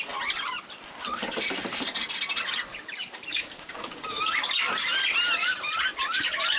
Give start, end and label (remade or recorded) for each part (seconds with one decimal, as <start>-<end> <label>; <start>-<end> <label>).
0.0-3.3 recorded; 3.3-4.3 remade; 4.3-6.6 recorded